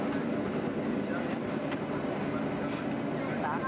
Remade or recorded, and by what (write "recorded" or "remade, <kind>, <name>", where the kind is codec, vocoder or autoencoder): recorded